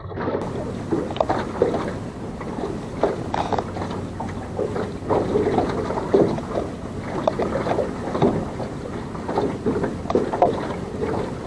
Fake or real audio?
real